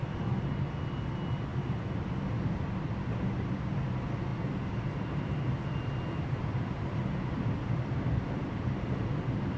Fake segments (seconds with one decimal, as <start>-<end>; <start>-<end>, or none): 4.3-9.2